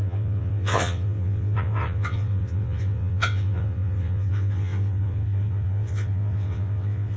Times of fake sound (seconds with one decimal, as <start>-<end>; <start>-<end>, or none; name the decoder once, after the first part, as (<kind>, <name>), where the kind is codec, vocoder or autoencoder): 0.0-7.2 (vocoder, WaveNeXt)